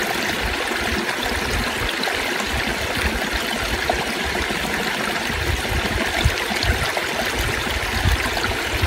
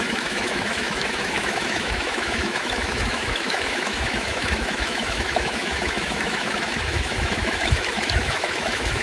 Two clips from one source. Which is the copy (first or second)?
second